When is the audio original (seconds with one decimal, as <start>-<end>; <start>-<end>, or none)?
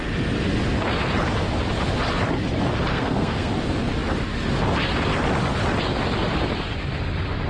0.0-2.9; 3.5-7.5